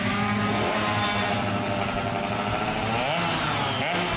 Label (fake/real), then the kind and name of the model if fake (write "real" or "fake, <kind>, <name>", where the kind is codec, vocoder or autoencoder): real